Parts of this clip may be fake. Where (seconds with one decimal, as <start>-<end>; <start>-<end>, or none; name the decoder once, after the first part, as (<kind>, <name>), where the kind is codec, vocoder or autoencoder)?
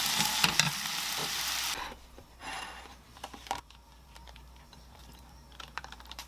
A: 1.2-1.7 (vocoder, BigVGAN v2); 2.4-6.3